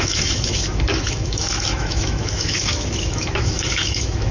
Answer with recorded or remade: remade